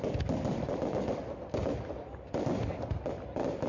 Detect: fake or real real